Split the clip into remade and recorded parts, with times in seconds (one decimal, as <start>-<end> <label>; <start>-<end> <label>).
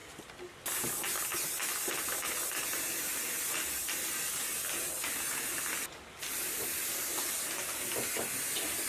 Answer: 0.0-0.6 remade; 0.6-8.9 recorded